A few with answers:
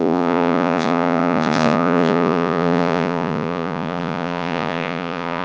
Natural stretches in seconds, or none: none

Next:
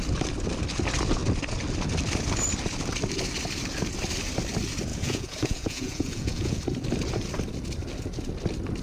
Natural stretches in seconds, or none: 0.0-4.9; 6.6-8.8

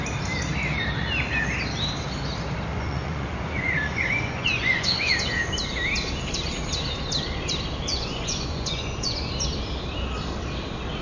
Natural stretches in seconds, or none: 0.0-2.7; 5.1-7.9; 9.3-11.0

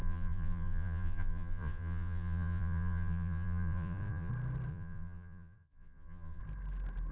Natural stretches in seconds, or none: 4.3-4.7; 6.4-7.1

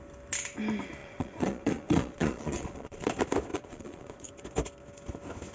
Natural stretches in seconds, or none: 0.0-1.0; 3.1-3.5; 4.3-5.5

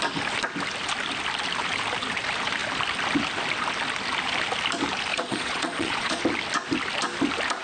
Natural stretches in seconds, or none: 0.0-5.1; 6.2-7.6